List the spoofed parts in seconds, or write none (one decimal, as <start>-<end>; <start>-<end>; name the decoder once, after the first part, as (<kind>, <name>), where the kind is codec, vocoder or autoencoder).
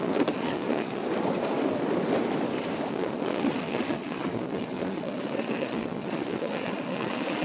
0.0-1.0 (vocoder, Vocos); 2.9-7.4